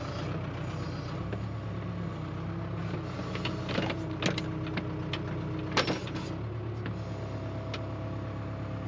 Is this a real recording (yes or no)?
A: yes